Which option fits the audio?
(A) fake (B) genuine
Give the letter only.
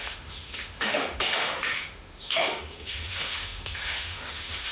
A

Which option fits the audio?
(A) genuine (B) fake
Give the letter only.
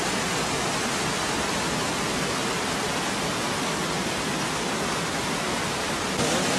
A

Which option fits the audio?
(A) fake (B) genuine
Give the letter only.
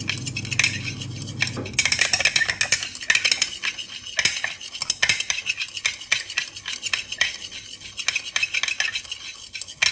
B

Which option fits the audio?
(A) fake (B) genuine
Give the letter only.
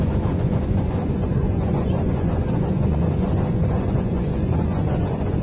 A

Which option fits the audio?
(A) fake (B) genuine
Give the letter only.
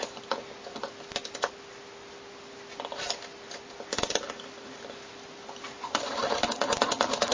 B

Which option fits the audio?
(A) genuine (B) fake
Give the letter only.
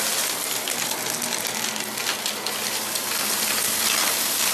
A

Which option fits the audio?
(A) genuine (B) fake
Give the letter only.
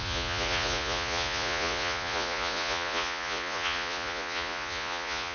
B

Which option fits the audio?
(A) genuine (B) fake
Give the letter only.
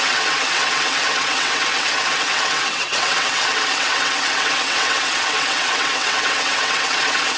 B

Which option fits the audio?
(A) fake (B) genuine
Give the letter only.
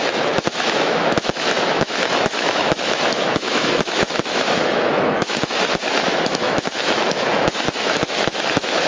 A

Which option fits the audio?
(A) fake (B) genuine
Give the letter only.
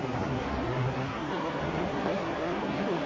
A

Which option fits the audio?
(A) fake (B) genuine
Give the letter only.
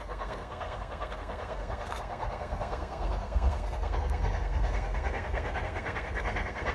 A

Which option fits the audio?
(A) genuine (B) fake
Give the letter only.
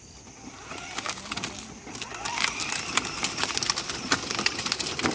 A